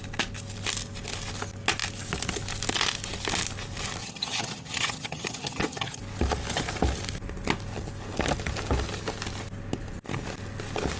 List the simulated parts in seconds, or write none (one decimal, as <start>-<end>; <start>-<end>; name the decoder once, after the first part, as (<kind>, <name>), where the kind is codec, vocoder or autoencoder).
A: 4.0-6.0 (vocoder, HiFi-GAN)

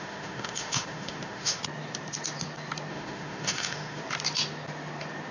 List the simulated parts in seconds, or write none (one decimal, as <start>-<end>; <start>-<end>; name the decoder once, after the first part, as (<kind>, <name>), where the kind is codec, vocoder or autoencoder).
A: 0.0-1.6 (autoencoder, DAC-VAE); 2.9-4.0

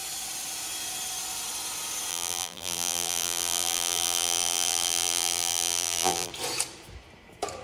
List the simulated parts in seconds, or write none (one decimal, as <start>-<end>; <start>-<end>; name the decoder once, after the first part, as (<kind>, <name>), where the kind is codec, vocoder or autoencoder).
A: 2.1-6.3 (vocoder, BigVGAN v2)

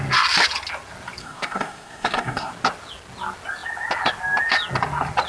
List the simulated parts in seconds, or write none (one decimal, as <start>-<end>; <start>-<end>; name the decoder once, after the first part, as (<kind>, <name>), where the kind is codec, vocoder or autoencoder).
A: 1.2-2.5 (codec, SNAC)

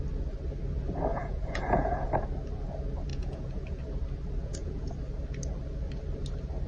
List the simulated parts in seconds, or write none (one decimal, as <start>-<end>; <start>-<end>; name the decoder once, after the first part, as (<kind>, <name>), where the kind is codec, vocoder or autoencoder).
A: 1.1-2.1 (vocoder, Vocos); 3.1-3.8; 4.4-4.9

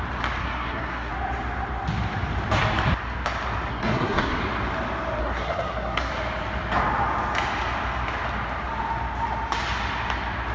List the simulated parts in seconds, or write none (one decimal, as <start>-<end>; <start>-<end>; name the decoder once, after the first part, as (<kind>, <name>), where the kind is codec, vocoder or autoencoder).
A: 0.4-1.1 (codec, SNAC); 3.7-4.4; 5.2-6.1